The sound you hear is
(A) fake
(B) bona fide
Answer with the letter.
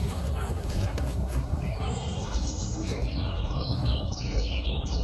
A